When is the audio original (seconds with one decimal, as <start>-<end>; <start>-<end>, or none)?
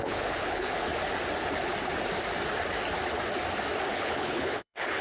0.9-3.8